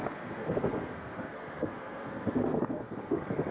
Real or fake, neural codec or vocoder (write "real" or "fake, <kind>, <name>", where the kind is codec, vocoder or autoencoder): fake, codec, SNAC